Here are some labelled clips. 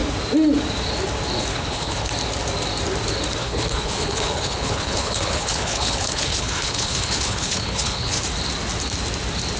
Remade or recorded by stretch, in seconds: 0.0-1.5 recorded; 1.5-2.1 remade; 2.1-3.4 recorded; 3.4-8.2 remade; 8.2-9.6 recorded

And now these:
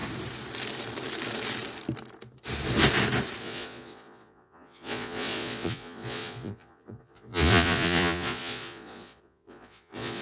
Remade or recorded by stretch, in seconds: 0.0-3.4 recorded; 3.4-10.2 remade

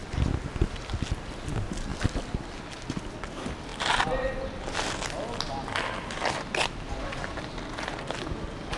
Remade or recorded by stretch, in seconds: 0.0-8.8 recorded

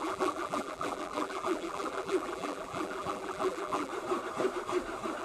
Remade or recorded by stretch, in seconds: 0.0-3.9 remade; 3.9-5.2 recorded

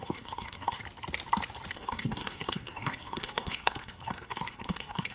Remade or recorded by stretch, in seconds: 0.0-0.8 remade; 0.8-1.7 recorded; 1.7-5.1 remade

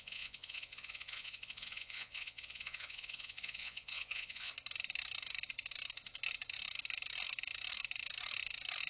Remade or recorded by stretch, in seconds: 0.0-4.5 remade; 4.5-8.9 recorded